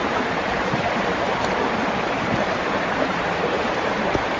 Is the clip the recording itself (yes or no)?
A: no